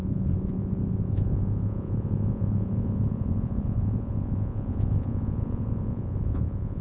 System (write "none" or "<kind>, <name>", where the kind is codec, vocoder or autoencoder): vocoder, Vocos